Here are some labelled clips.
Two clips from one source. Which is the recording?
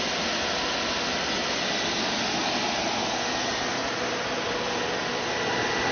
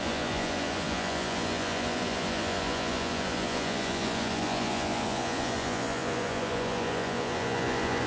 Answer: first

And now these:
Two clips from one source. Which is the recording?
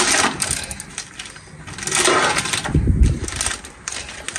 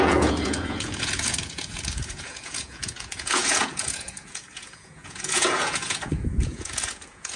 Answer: first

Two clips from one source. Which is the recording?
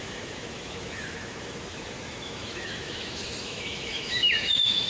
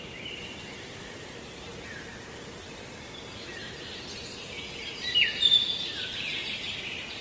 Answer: second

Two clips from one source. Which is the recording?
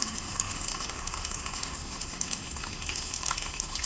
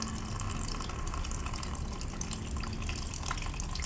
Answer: second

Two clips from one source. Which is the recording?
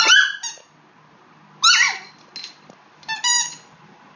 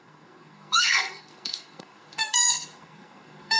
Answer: first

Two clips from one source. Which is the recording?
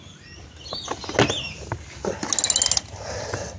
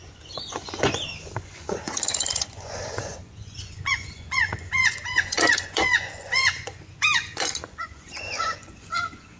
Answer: first